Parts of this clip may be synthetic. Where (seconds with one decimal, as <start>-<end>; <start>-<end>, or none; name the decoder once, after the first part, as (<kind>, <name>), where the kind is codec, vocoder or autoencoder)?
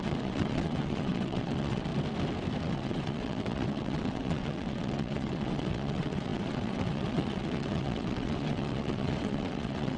0.0-1.9 (vocoder, WaveNeXt); 2.6-10.0